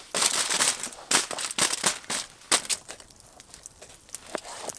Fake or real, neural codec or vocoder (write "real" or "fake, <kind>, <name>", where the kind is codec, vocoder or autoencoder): real